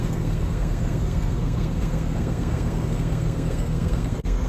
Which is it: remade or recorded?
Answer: remade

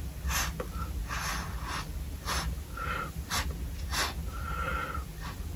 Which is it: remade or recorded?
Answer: recorded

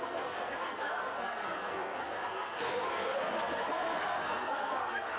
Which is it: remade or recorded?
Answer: remade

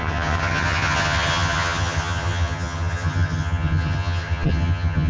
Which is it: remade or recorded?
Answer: remade